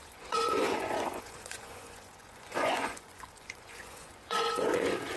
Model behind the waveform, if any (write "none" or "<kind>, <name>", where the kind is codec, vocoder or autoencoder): vocoder, Vocos